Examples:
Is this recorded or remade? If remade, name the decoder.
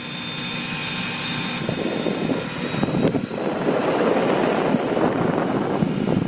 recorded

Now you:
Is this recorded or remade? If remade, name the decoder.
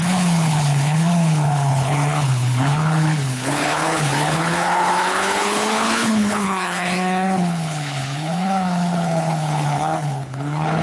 remade, codec, HILCodec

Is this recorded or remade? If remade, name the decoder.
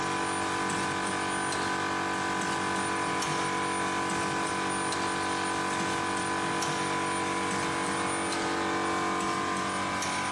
recorded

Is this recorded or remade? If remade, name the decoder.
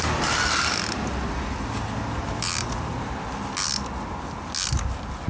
recorded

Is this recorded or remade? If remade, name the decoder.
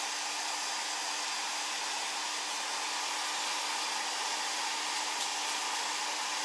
recorded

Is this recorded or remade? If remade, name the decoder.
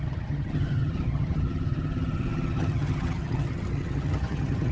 remade, vocoder, HiFi-GAN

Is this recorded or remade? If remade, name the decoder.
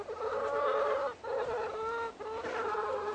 recorded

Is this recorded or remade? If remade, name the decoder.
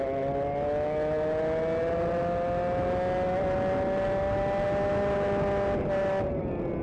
recorded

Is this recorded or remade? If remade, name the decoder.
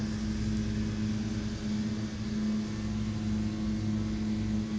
recorded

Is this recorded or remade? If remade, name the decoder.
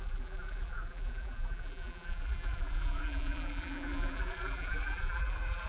remade, vocoder, BigVGAN v2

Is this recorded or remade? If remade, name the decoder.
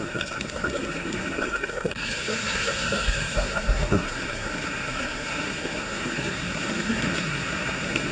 remade, codec, SNAC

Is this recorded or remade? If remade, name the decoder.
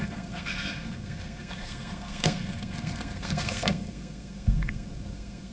remade, codec, SNAC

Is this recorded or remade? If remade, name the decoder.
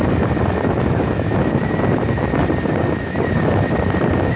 recorded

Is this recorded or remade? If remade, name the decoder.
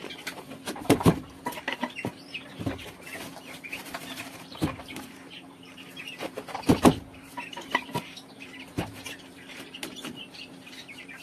remade, vocoder, BigVGAN v2